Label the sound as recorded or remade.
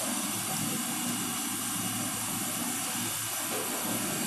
recorded